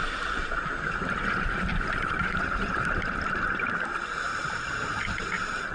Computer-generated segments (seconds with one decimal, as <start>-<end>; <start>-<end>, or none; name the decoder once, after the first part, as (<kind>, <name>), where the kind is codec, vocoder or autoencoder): 2.2-2.8 (vocoder, BigVGAN v2); 4.3-5.0